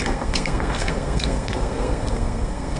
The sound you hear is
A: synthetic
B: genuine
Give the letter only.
A